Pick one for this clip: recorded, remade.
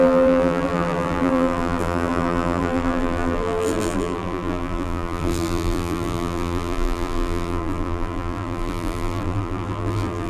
remade